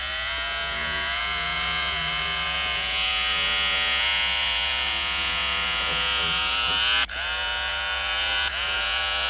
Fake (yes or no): yes